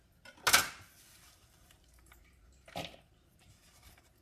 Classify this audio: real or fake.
real